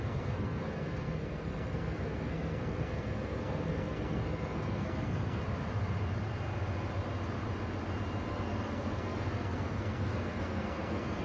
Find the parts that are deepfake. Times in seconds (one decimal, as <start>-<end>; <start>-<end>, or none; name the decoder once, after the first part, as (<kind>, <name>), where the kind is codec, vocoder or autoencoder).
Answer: 0.0-5.4 (codec, SNAC); 8.3-11.2